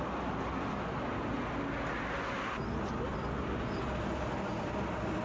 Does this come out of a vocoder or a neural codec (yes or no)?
no